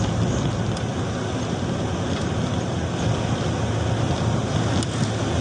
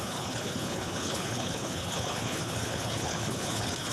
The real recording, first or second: first